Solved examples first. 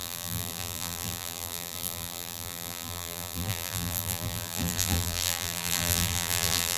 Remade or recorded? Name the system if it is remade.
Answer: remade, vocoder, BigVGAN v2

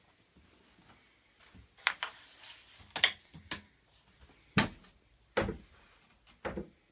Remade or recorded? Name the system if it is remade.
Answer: recorded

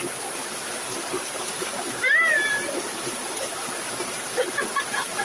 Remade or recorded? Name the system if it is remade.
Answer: remade, vocoder, BigVGAN v2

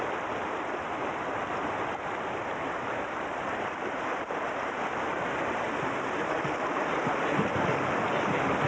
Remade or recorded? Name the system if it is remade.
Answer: remade, vocoder, BigVGAN v2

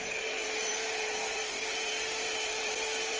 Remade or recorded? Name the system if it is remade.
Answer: remade, vocoder, BigVGAN v2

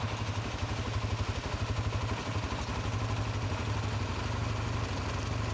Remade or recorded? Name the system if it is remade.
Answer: recorded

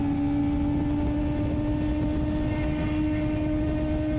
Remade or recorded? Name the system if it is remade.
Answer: recorded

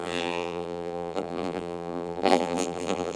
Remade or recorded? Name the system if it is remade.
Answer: remade, vocoder, BigVGAN v2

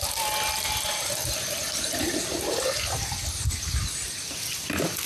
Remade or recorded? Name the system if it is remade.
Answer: recorded